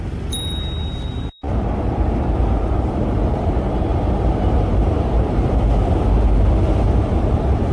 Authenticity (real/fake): fake